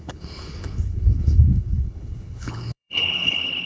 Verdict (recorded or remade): remade